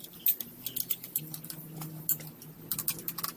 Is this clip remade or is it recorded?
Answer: recorded